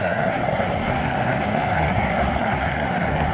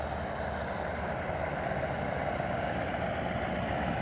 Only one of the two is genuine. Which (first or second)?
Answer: second